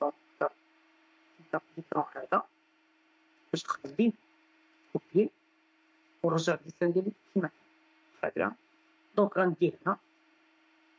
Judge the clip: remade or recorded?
remade